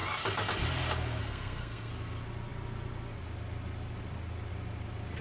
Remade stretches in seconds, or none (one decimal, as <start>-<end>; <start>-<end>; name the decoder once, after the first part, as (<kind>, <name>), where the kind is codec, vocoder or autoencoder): 1.2-1.9 (codec, SNAC)